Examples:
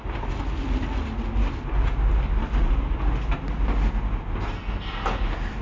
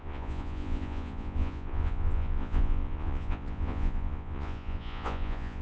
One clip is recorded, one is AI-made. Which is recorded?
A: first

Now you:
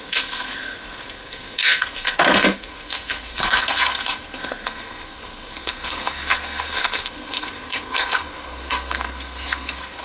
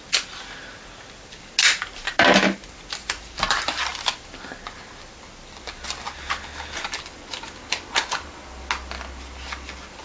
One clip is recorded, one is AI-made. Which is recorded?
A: second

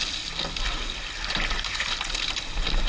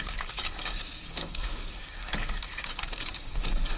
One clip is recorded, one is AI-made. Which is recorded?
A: first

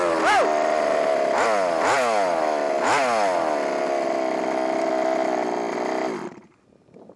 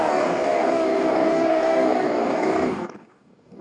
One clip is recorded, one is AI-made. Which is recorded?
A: first